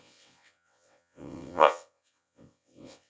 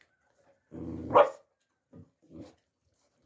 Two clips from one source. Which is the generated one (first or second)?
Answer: first